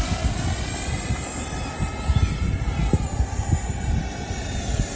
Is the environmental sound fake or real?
real